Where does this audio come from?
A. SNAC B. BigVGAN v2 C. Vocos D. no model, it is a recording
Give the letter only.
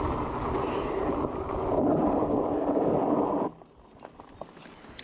D